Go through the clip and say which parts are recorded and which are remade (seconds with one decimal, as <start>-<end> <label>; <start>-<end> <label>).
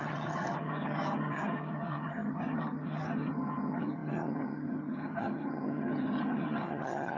0.0-7.2 remade